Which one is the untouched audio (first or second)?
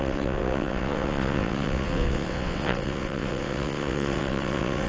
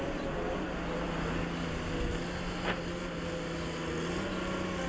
second